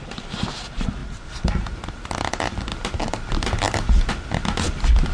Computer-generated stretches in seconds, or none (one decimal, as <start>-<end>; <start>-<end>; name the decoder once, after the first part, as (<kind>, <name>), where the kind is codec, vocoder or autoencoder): none